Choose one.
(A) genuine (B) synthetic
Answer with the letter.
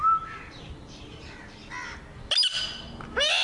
A